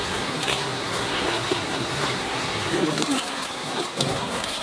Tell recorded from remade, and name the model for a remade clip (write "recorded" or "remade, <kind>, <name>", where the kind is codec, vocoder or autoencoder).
remade, codec, SNAC